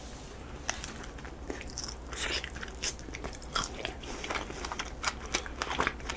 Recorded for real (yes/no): yes